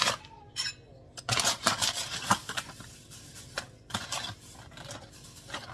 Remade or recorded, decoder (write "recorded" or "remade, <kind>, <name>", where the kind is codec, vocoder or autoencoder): recorded